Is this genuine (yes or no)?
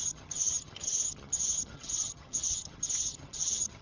no